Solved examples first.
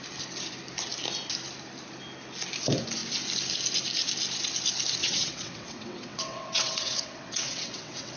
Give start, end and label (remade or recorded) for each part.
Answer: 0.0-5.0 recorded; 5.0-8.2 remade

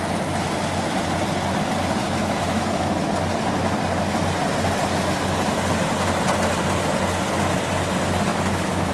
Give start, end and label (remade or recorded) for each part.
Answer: 0.0-2.0 recorded; 2.0-2.9 remade; 2.9-8.3 recorded; 8.3-8.9 remade

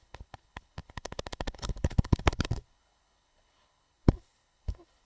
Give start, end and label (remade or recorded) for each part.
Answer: 0.0-5.1 remade

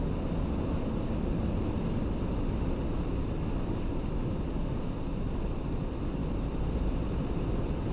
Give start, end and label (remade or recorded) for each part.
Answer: 0.0-6.2 recorded; 6.2-6.7 remade; 6.7-7.9 recorded